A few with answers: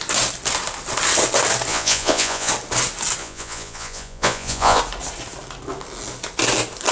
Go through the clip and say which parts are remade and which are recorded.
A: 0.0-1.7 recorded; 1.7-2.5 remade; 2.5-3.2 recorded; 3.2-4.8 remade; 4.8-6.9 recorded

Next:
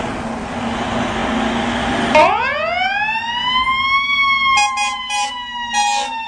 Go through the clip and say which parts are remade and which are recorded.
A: 0.0-6.3 recorded

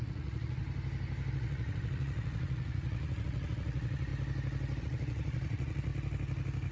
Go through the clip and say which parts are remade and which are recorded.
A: 0.0-0.6 remade; 0.6-1.3 recorded; 1.3-4.1 remade; 4.1-4.8 recorded; 4.8-5.9 remade; 5.9-6.7 recorded

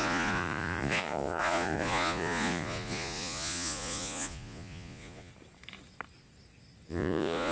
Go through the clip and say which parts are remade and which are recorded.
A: 0.0-5.3 remade; 5.3-6.9 recorded; 6.9-7.5 remade